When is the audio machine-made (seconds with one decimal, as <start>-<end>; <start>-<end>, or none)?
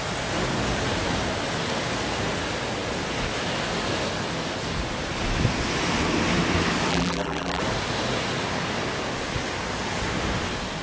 6.9-7.6